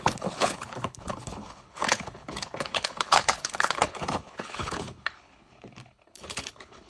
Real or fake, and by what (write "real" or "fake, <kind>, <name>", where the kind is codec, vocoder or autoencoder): fake, codec, HILCodec